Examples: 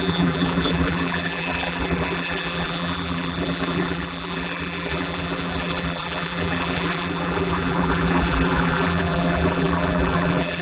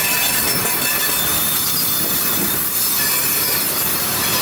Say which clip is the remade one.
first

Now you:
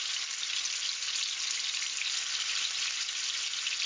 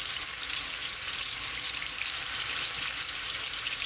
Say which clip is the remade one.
second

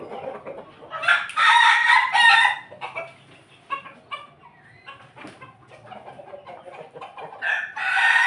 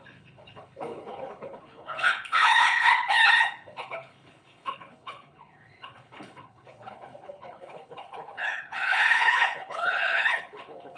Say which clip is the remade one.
second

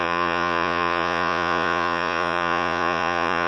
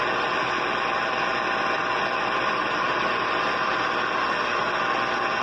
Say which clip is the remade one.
first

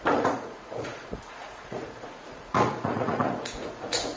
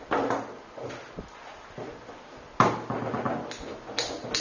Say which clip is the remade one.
first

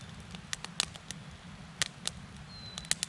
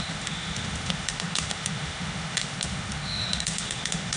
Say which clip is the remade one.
second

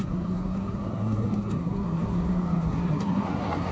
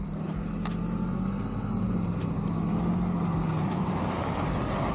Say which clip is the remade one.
first